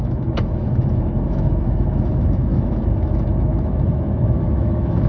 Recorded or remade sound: remade